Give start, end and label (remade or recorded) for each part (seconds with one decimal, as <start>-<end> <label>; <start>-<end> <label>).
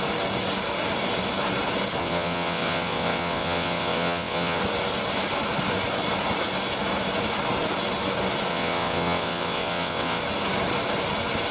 0.0-2.0 recorded; 2.0-4.6 remade; 4.6-8.5 recorded; 8.5-10.2 remade; 10.2-11.5 recorded